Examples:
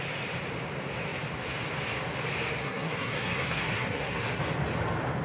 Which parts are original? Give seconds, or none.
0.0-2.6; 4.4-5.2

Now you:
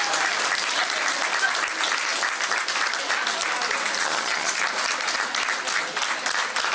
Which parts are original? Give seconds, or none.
0.0-4.0; 4.5-6.7

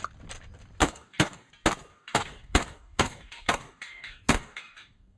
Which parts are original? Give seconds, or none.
0.0-0.8; 1.5-1.9